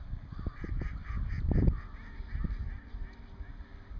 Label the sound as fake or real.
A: real